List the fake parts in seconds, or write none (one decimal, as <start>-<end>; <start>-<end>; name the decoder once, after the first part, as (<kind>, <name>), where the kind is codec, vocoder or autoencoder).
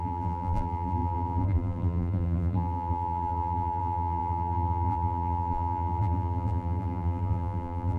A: 0.0-8.0 (vocoder, BigVGAN v2)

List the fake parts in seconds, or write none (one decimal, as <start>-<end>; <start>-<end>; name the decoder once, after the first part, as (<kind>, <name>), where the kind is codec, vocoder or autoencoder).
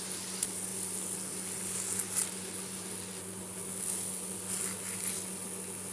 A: none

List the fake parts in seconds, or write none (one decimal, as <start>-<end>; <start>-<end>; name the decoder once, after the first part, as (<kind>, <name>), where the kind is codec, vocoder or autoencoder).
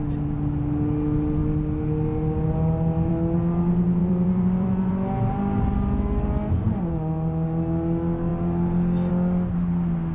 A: 4.0-4.9 (vocoder, BigVGAN v2)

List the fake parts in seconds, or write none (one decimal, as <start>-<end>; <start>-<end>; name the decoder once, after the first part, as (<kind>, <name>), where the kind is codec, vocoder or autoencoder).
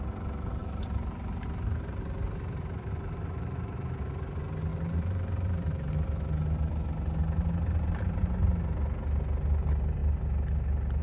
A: 0.6-4.0 (vocoder, BigVGAN v2); 4.7-5.9; 7.2-8.2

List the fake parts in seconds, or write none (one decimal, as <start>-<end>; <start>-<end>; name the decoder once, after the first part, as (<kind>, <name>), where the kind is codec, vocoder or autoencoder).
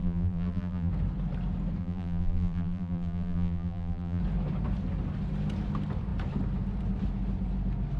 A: 0.0-0.9 (vocoder, BigVGAN v2); 1.8-4.2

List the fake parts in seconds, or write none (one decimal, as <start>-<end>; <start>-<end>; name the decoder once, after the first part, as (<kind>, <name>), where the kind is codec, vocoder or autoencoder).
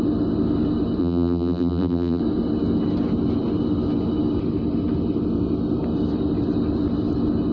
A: 1.0-2.2 (vocoder, BigVGAN v2)